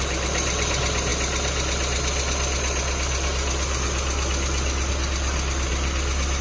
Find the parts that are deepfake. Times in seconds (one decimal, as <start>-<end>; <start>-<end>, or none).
none